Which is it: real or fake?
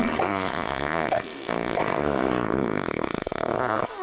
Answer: fake